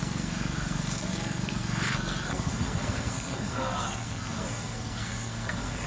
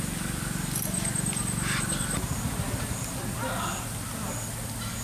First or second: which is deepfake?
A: first